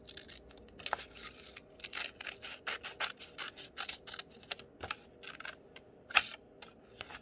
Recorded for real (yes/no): yes